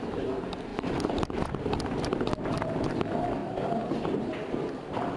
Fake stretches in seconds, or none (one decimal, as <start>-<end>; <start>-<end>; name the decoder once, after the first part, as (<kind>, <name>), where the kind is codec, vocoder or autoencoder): 0.7-1.3 (vocoder, BigVGAN v2)